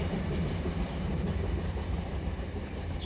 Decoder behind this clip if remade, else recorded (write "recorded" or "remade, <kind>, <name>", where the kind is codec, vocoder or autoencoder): remade, vocoder, BigVGAN v2